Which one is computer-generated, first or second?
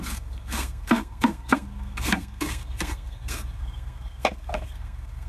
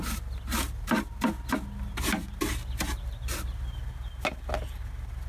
first